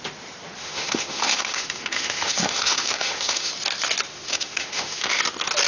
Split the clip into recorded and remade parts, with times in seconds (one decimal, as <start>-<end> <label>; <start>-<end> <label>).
0.0-0.6 recorded; 0.6-3.5 remade; 3.5-4.1 recorded; 4.1-5.2 remade; 5.2-5.7 recorded